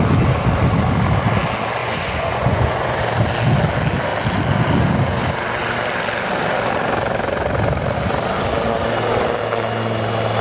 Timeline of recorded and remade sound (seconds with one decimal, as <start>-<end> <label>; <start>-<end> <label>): 0.0-1.8 recorded; 1.8-3.0 remade; 3.0-10.4 recorded